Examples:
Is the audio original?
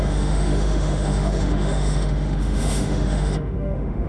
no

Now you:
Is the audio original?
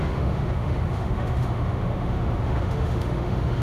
no